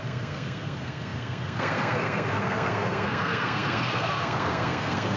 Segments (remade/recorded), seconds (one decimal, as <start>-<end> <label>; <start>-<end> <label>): 0.0-5.2 remade